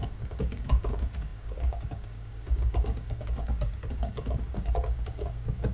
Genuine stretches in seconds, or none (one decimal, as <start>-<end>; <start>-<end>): none